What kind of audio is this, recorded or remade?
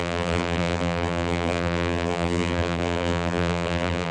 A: remade